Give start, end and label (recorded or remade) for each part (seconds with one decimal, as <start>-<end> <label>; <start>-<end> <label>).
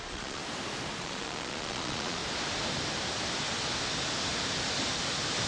0.0-0.4 remade; 0.4-1.0 recorded; 1.0-2.2 remade; 2.2-5.5 recorded